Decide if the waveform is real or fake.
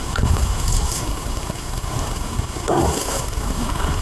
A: fake